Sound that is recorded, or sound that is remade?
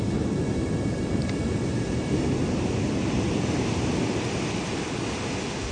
recorded